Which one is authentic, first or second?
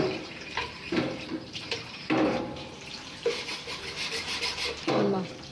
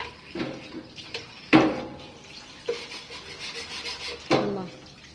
second